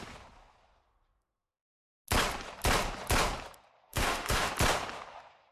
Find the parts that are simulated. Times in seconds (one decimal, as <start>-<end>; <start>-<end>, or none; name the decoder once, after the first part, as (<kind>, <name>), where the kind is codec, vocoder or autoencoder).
3.9-4.5 (autoencoder, DAC-VAE)